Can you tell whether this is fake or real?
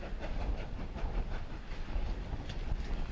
fake